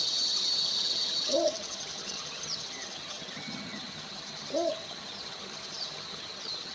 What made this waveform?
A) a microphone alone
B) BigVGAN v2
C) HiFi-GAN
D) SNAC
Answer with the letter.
C